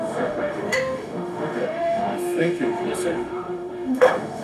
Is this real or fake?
fake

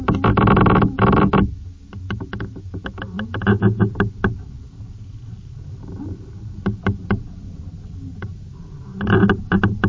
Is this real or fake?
real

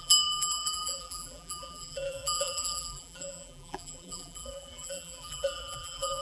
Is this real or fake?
fake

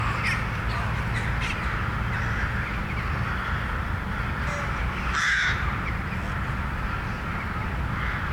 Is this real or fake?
real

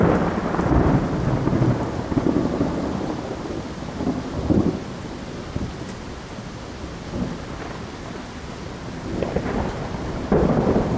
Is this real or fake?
real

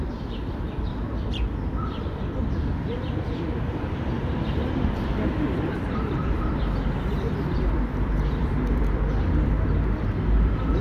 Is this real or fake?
fake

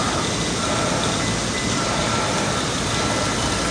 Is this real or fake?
real